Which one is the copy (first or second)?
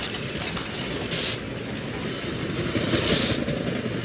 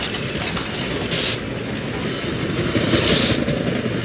first